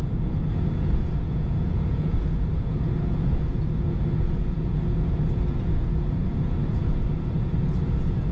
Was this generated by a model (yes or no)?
yes